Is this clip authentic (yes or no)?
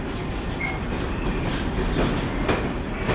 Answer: yes